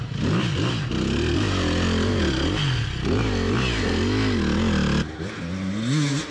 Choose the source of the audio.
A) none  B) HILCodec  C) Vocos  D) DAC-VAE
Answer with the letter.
A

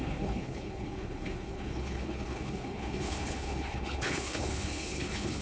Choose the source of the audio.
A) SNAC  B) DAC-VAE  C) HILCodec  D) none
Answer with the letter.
C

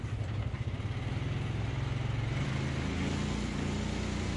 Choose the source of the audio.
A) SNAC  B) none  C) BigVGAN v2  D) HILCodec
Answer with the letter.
B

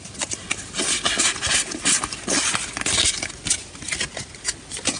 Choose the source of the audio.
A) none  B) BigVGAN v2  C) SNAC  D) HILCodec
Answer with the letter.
A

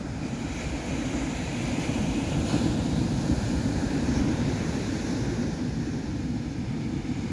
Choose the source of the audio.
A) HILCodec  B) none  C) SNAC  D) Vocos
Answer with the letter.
B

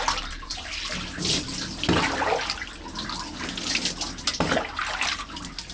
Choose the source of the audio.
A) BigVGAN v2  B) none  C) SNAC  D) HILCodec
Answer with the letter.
B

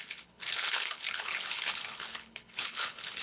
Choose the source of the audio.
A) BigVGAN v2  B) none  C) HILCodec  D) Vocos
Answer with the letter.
C